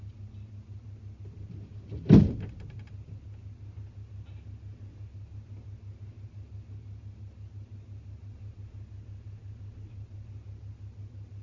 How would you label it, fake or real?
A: real